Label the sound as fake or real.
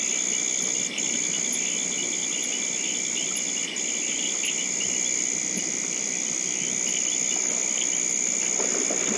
real